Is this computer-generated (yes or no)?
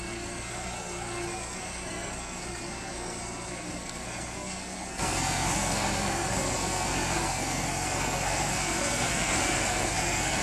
yes